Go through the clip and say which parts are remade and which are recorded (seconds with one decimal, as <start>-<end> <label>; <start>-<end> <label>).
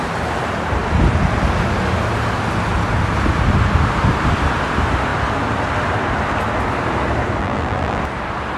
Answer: 0.0-7.4 recorded; 7.4-8.0 remade; 8.0-8.6 recorded